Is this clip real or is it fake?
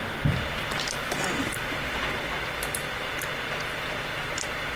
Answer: real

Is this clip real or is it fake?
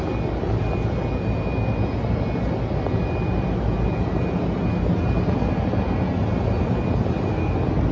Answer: real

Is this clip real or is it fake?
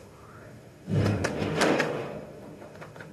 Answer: fake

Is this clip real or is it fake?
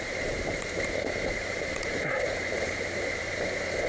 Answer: fake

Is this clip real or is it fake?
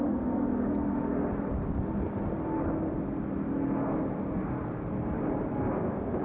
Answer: real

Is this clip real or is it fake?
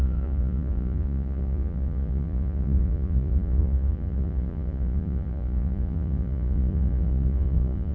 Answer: fake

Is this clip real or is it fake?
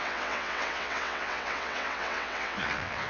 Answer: fake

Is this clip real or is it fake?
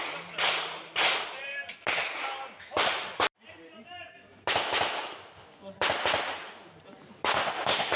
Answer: real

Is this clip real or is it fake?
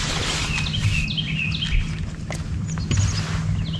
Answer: real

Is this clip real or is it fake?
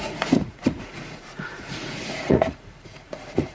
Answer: fake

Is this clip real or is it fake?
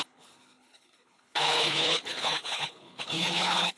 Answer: fake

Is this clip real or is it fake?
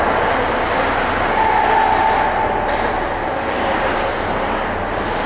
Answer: real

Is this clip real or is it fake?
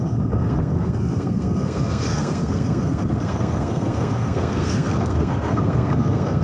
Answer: fake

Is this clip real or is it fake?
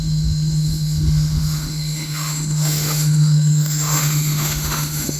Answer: fake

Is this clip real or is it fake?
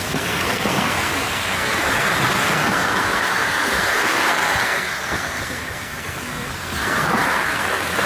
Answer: fake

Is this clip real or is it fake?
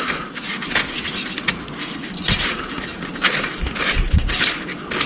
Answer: real